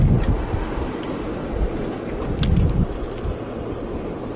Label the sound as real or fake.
real